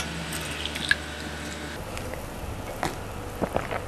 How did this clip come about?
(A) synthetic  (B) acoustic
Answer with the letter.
B